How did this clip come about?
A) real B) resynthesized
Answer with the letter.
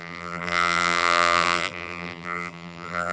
B